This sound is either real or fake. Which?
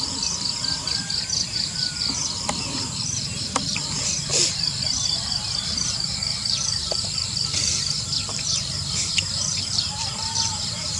fake